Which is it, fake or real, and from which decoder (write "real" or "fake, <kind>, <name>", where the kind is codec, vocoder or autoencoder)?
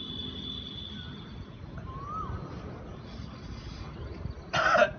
real